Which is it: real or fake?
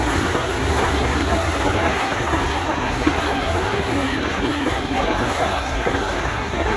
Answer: fake